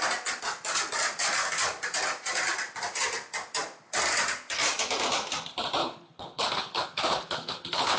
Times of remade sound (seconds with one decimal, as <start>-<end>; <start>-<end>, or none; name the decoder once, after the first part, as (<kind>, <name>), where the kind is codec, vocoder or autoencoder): 5.8-8.0 (codec, HILCodec)